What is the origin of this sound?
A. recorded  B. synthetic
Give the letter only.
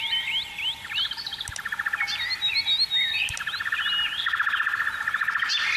A